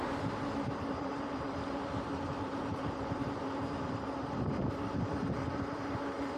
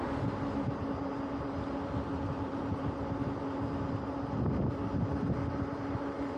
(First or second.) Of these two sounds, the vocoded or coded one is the first